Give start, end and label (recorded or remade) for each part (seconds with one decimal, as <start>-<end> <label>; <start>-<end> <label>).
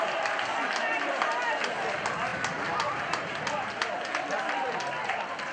0.0-5.5 recorded